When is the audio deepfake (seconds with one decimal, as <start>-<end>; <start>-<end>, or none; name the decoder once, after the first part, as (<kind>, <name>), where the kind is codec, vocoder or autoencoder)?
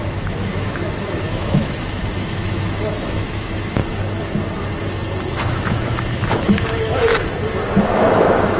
0.0-3.8 (autoencoder, DAC-VAE); 5.3-7.1; 7.8-8.6